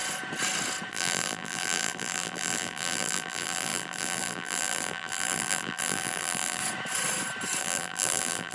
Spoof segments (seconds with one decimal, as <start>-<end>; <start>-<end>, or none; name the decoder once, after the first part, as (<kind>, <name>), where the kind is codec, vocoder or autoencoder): 0.9-6.6 (vocoder, BigVGAN v2); 7.6-8.5